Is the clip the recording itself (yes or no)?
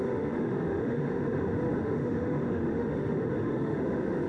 no